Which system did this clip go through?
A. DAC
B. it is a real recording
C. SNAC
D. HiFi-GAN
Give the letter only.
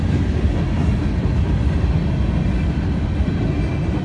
B